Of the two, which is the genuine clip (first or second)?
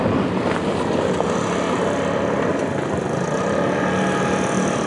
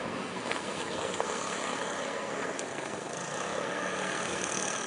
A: first